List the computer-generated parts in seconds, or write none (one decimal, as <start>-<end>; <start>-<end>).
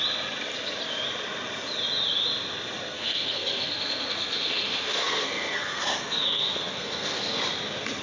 2.9-7.4